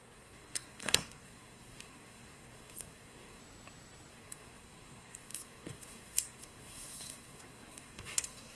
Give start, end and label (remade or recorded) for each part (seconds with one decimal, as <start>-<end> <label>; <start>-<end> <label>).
0.0-3.4 remade; 3.4-4.1 recorded; 4.1-8.6 remade

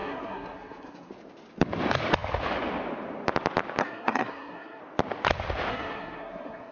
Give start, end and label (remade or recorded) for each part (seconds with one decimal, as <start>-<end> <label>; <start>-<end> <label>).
0.0-1.1 remade; 1.1-3.8 recorded; 3.8-4.8 remade; 4.8-5.7 recorded; 5.7-6.7 remade

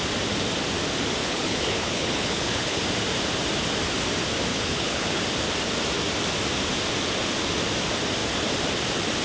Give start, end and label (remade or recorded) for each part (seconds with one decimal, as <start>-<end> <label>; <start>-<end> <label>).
0.0-1.2 recorded; 1.2-2.8 remade; 2.8-4.5 recorded; 4.5-5.2 remade; 5.2-9.2 recorded

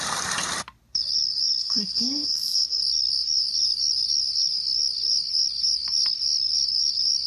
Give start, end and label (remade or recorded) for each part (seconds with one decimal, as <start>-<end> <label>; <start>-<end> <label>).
0.0-1.6 recorded; 1.6-2.8 remade; 2.8-7.3 recorded

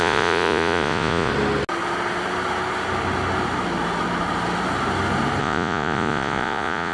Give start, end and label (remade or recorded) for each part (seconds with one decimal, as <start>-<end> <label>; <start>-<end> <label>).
0.0-1.3 remade; 1.3-5.4 recorded; 5.4-6.9 remade

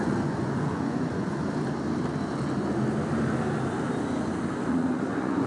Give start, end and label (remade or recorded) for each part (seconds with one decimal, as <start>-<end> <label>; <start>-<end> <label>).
0.0-1.4 remade; 1.4-4.7 recorded; 4.7-5.5 remade

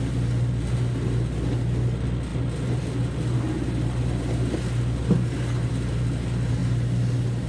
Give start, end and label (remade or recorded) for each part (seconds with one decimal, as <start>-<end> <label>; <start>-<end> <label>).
0.0-7.5 recorded

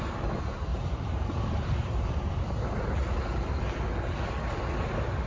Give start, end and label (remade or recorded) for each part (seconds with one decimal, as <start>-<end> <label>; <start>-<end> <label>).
0.0-0.7 recorded; 0.7-3.6 remade; 3.6-5.3 recorded